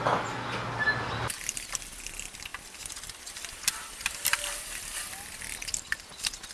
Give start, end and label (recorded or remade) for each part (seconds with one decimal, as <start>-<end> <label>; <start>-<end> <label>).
0.0-6.5 recorded